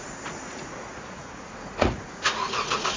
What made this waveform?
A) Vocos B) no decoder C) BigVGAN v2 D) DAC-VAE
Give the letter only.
A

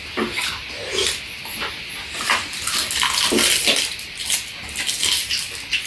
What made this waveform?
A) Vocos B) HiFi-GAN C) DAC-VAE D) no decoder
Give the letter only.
D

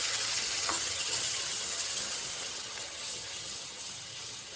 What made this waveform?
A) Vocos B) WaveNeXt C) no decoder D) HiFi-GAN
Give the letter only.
D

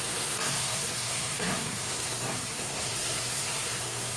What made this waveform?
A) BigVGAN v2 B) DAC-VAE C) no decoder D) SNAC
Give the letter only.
D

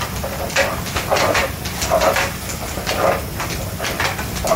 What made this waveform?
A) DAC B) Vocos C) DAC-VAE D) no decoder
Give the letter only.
D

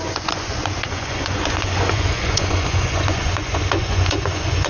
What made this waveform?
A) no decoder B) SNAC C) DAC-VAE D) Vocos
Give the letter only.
D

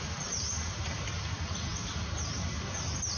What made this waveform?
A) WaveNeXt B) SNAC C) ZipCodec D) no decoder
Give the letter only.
D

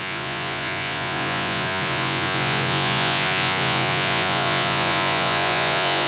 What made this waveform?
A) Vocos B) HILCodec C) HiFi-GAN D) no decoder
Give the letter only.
A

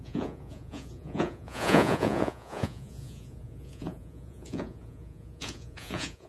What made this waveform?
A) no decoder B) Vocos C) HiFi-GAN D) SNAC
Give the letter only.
B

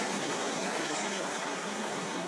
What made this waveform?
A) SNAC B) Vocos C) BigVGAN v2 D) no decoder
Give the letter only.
A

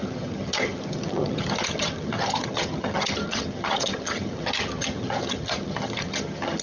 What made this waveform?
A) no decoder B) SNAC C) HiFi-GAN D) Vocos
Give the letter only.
C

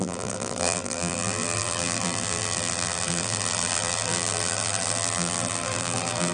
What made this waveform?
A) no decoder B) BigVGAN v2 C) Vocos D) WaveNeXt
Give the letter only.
B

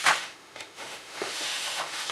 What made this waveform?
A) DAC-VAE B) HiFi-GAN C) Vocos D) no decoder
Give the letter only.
A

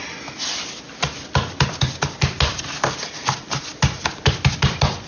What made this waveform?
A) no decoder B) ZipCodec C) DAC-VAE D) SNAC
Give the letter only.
A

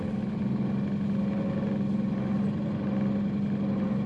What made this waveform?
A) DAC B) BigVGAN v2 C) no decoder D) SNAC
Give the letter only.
C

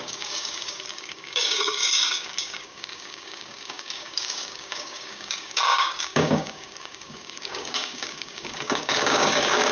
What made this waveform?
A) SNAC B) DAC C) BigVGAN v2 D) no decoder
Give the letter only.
B